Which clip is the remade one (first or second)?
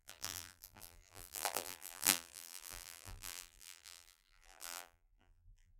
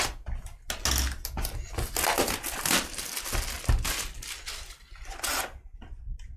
first